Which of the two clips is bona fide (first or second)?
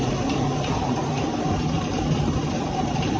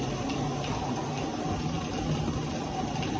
second